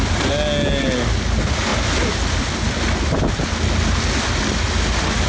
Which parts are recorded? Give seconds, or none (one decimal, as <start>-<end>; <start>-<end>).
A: 0.0-5.3

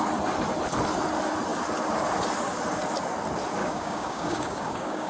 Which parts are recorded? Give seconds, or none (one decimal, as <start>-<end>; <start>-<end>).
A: 0.0-3.6

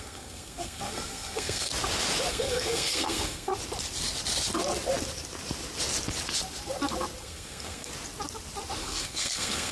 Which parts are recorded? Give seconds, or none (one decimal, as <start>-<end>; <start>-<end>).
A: 1.7-2.3; 3.5-7.2; 7.9-8.8

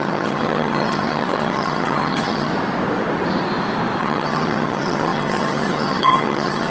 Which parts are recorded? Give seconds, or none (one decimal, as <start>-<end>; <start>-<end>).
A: 2.5-4.0

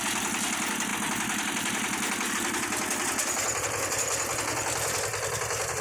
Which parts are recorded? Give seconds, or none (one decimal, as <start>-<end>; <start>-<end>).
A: 0.0-5.8

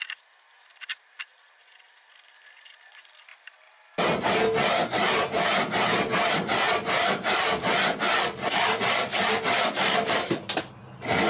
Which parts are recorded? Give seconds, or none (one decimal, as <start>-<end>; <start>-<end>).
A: 0.0-11.3

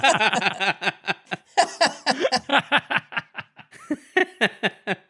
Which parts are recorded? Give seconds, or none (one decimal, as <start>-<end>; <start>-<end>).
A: 0.0-5.1

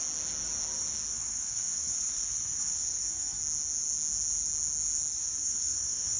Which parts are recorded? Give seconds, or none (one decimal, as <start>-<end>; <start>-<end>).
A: 0.0-1.1; 3.4-5.1